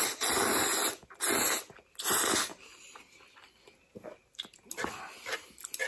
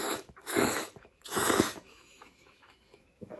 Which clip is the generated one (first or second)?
second